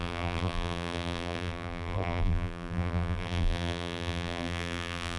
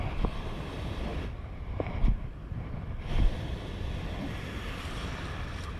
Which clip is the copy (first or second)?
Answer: first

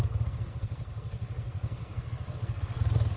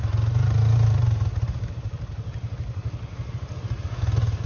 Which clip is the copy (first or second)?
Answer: first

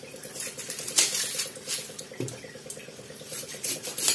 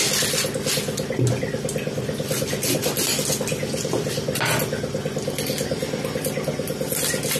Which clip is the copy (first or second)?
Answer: first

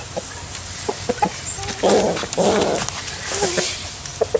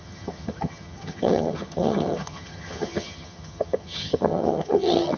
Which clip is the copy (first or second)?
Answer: second